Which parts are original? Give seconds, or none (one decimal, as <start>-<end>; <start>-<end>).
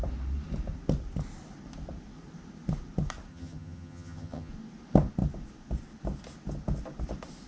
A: 0.0-3.3; 4.5-7.5